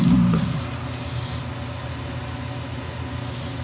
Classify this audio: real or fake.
real